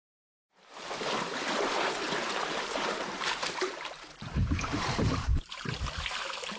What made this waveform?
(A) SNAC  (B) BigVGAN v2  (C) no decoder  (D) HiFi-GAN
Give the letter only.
B